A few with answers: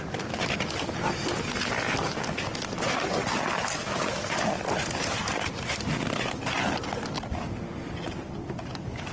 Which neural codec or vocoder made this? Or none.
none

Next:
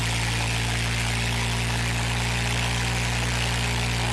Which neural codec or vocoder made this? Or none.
none